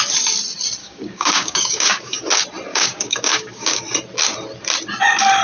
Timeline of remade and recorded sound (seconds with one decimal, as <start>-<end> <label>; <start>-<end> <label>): 0.0-0.8 recorded; 0.8-2.2 remade; 2.2-2.7 recorded; 2.7-3.8 remade; 3.8-5.4 recorded